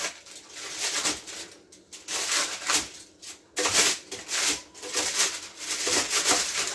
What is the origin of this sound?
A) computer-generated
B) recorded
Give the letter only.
B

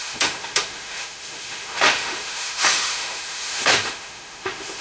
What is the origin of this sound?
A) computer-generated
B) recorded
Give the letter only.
A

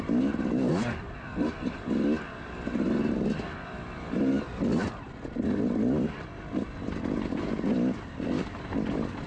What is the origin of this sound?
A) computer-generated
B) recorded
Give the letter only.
B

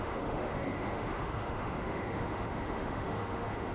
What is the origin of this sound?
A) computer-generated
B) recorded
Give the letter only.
A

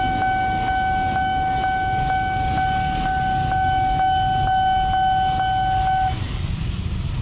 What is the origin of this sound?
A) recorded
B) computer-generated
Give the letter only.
A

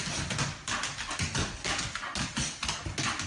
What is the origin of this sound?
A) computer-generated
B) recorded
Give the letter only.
B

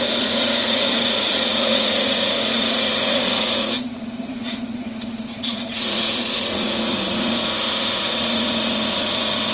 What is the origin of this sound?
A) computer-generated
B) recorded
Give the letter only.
A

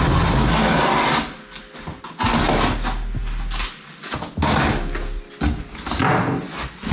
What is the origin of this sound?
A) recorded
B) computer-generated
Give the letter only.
A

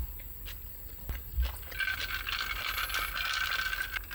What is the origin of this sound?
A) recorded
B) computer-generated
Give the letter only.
A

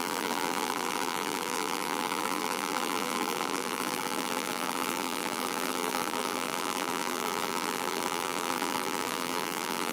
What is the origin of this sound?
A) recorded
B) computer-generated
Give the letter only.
B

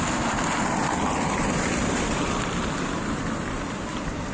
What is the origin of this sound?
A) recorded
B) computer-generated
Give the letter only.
B